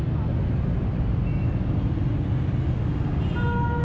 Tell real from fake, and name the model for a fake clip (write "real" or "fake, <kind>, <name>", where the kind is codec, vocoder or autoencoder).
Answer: real